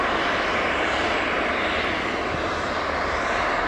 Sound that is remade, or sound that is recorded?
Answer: recorded